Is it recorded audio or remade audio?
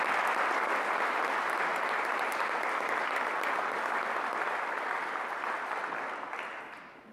recorded